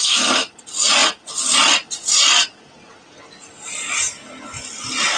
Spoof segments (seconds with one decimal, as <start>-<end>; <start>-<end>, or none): none